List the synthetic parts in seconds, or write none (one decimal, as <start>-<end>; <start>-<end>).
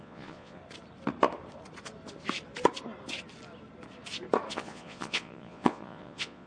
0.0-0.6; 4.5-6.5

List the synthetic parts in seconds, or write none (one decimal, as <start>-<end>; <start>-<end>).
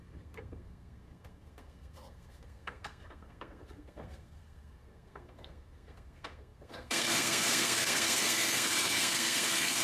0.0-9.8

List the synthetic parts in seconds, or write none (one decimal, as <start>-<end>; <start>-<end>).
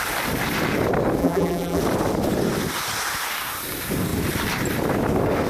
1.2-1.8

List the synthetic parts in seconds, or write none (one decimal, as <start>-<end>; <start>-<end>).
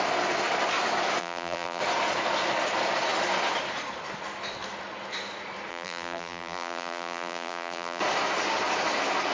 1.2-1.8; 5.7-8.0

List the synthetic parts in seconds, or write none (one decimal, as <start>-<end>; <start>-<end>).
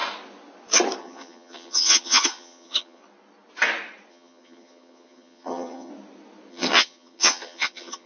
1.0-3.0; 4.1-5.9; 6.5-8.1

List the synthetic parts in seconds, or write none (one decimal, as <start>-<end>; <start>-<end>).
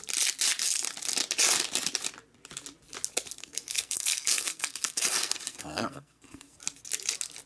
3.4-6.6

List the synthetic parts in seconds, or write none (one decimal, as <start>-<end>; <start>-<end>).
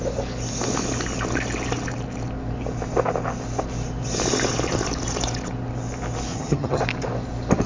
6.3-6.8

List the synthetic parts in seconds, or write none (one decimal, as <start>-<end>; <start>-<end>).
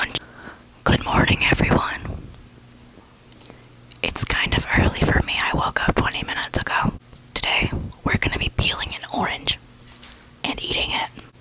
none